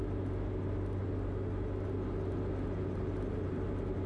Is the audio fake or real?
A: real